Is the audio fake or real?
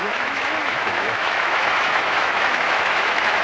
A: fake